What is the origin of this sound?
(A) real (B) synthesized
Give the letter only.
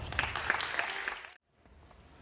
A